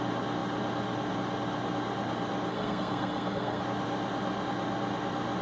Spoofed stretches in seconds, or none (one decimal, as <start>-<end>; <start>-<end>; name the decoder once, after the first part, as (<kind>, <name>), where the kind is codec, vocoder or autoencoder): 2.5-3.6 (codec, SNAC)

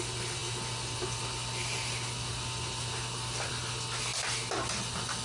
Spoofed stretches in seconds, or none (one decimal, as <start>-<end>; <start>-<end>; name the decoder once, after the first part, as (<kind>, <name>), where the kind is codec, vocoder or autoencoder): none

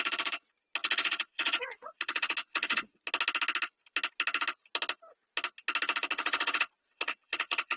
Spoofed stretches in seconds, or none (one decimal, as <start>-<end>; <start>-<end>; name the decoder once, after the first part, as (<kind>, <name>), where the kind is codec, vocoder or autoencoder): 0.8-3.0 (vocoder, Vocos); 6.1-7.8